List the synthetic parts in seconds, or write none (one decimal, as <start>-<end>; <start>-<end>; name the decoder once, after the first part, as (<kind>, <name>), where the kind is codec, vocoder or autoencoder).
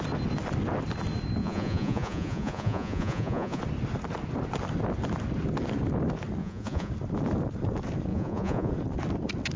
1.4-3.6 (vocoder, Vocos); 6.4-6.9; 8.1-8.7